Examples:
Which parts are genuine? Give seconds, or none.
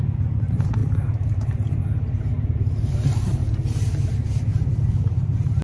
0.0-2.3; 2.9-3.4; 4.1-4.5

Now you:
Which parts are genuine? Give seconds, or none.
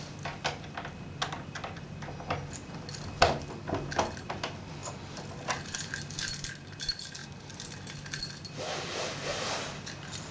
0.0-10.3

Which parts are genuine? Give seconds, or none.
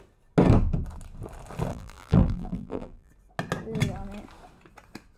0.0-1.7; 3.1-5.2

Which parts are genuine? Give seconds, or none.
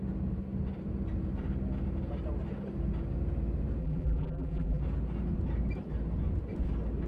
0.0-3.8; 4.8-7.1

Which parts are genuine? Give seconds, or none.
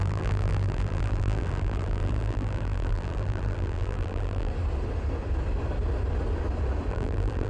4.5-6.9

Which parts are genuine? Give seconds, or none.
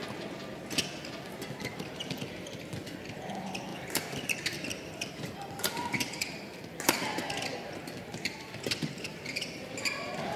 0.0-3.7; 6.8-10.4